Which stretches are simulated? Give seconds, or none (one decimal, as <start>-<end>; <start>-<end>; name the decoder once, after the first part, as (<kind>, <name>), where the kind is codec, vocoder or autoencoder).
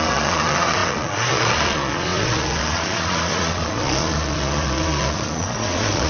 0.0-6.1 (vocoder, Vocos)